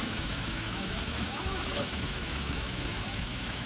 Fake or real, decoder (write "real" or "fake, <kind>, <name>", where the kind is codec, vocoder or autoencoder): fake, autoencoder, DAC-VAE